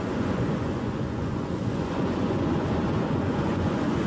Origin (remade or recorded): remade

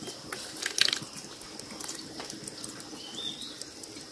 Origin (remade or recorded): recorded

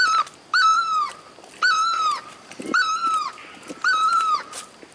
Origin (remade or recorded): recorded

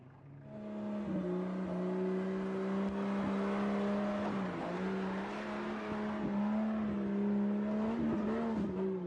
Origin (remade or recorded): recorded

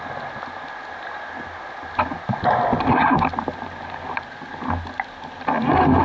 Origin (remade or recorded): recorded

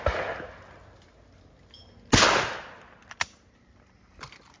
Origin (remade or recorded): recorded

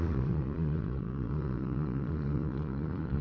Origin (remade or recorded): remade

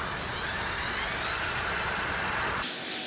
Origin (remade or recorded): recorded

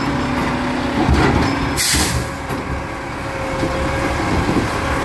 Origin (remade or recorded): recorded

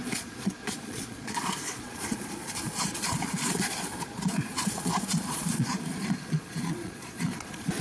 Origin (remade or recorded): remade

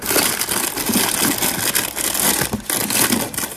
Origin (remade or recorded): recorded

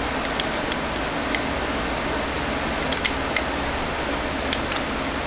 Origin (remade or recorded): recorded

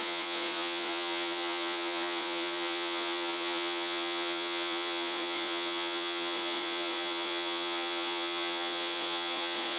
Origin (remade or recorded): remade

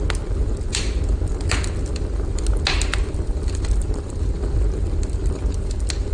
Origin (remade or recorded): recorded